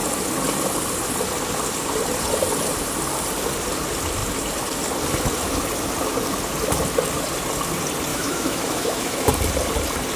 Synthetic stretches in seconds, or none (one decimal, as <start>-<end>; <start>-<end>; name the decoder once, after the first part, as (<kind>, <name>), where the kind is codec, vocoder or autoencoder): 8.1-9.3 (autoencoder, DAC-VAE)